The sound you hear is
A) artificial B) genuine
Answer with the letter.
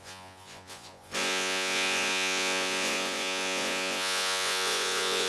A